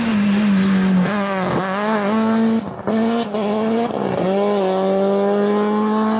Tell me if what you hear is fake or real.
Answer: real